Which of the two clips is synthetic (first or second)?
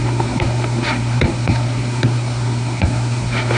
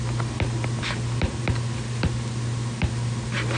first